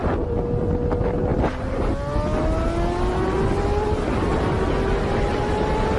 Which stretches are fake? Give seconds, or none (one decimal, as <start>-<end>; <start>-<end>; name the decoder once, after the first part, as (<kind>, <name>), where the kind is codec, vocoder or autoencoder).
none

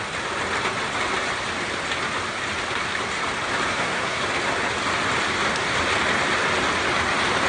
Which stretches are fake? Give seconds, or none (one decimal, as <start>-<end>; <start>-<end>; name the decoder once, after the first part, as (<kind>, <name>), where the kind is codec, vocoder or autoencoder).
3.7-4.2 (codec, SNAC)

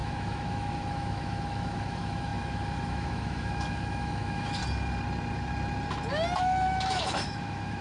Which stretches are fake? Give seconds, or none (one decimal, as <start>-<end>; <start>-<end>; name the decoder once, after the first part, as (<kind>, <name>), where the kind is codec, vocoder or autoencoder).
0.0-4.6 (autoencoder, DAC-VAE); 6.4-7.8

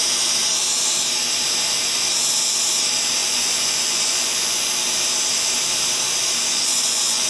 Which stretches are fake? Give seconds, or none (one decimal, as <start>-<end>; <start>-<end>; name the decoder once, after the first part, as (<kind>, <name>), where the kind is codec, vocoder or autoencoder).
3.2-4.7 (vocoder, Vocos); 6.5-7.3